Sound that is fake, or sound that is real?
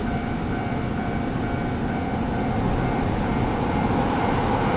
real